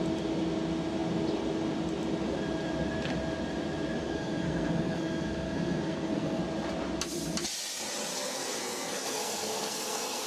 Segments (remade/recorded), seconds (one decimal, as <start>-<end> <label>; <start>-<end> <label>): 0.0-4.0 recorded; 4.0-6.4 remade; 6.4-8.1 recorded; 8.1-10.3 remade